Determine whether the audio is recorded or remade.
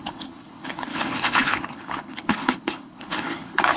remade